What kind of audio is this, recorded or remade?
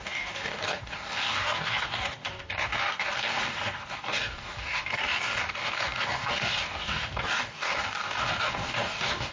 remade